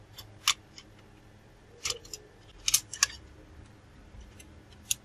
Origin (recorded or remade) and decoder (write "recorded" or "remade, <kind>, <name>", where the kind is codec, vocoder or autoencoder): recorded